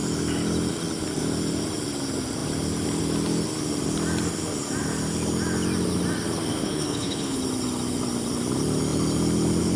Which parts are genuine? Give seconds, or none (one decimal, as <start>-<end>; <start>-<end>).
0.0-6.6; 7.4-9.8